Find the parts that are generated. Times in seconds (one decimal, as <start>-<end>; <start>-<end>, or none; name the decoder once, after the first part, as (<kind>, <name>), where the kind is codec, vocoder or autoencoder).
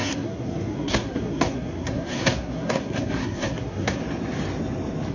0.0-4.0 (codec, SNAC)